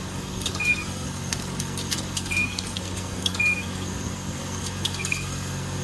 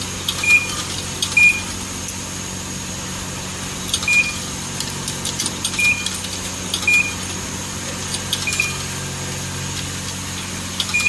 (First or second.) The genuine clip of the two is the second